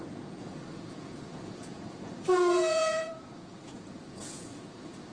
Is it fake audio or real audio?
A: fake